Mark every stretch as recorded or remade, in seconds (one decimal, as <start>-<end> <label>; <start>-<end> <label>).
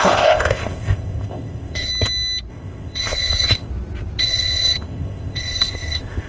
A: 0.0-1.9 remade; 1.9-2.5 recorded; 2.5-3.7 remade; 3.7-4.2 recorded; 4.2-6.3 remade